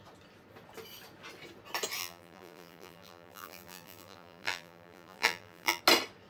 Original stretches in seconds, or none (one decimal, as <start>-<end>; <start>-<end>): 0.0-2.0; 5.8-6.3